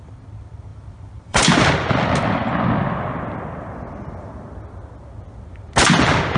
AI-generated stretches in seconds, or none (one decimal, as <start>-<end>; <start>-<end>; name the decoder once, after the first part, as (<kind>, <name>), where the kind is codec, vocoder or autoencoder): 0.7-1.7 (vocoder, BigVGAN v2)